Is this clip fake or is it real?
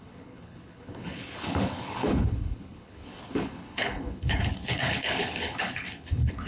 fake